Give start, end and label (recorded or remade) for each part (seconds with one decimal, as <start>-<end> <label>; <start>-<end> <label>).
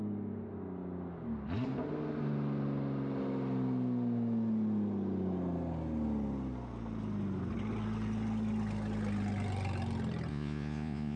0.0-10.3 recorded; 10.3-11.2 remade